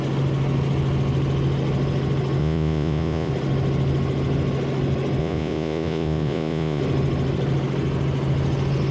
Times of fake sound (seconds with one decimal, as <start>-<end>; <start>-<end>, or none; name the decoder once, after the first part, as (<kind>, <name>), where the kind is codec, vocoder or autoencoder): 2.4-3.3 (vocoder, Vocos); 5.2-6.8